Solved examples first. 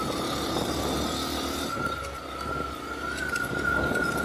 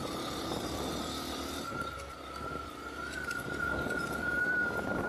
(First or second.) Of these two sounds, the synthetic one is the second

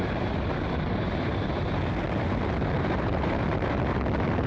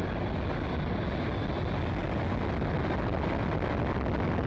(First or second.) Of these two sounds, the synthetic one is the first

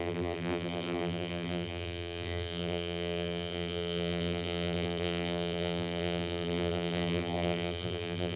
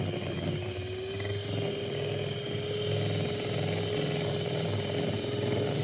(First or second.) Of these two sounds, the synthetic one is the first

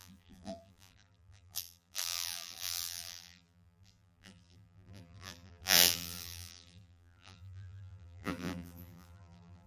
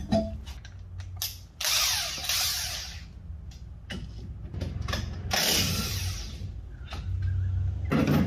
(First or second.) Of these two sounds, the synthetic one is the first